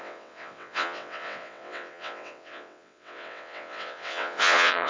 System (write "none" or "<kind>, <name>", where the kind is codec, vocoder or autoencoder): vocoder, WaveNeXt